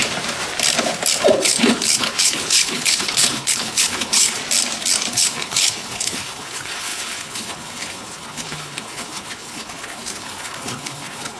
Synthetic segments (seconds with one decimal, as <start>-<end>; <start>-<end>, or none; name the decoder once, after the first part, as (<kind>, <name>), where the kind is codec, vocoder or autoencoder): 1.3-4.4 (codec, HILCodec); 5.1-11.4